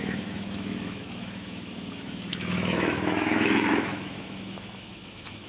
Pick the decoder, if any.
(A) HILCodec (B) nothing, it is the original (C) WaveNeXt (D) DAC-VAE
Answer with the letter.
D